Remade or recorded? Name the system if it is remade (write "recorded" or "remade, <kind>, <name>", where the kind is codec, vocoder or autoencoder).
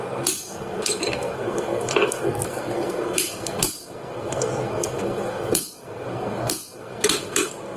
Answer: remade, codec, SNAC